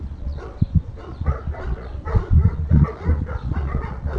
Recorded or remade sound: remade